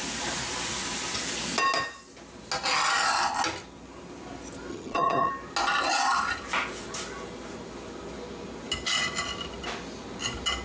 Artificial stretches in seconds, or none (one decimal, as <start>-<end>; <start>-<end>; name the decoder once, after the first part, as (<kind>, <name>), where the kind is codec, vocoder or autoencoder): 4.7-5.3 (vocoder, HiFi-GAN)